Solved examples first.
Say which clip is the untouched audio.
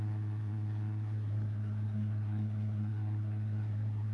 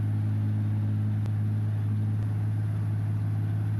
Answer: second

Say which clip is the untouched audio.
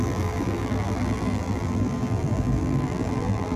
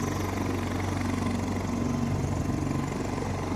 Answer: second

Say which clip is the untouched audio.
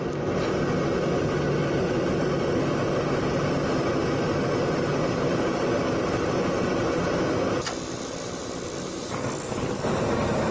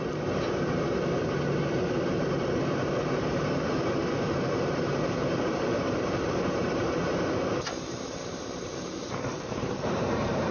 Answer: first